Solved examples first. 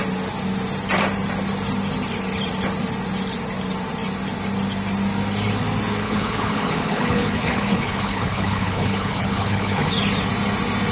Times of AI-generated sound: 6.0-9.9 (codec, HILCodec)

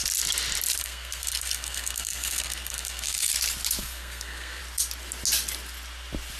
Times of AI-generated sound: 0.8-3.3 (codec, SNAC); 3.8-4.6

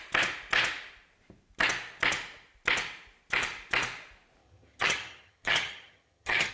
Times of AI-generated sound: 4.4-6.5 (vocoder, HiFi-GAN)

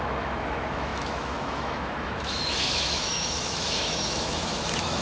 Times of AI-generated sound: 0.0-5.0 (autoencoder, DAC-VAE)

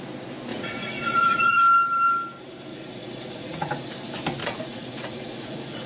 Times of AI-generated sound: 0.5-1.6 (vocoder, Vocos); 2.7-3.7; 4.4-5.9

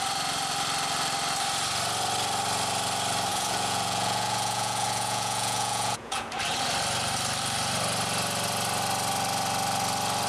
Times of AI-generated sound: 3.3-6.3 (vocoder, Vocos)

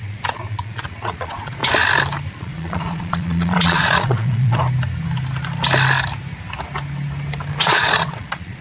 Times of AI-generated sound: 0.0-1.6 (vocoder, Vocos); 2.3-4.6; 7.6-8.6

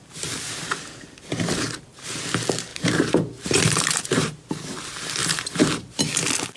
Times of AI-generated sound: 2.7-4.5 (vocoder, BigVGAN v2); 5.2-6.0